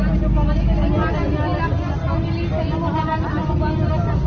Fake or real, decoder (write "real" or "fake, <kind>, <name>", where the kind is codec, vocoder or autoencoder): real